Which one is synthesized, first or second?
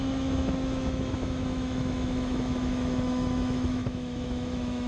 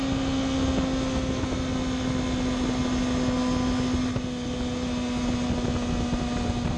first